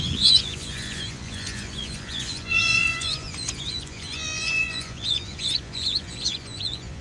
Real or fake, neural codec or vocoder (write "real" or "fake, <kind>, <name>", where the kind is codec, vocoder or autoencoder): fake, vocoder, Vocos